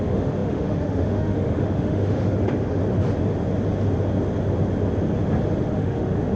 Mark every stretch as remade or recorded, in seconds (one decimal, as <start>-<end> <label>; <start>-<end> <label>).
0.0-2.8 remade; 2.8-5.7 recorded; 5.7-6.4 remade